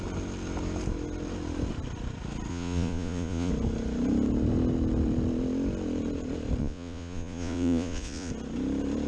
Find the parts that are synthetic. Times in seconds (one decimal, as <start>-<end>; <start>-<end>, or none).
2.5-3.5; 6.6-8.3